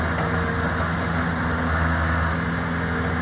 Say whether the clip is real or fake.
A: real